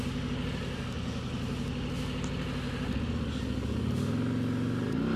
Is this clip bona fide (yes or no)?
yes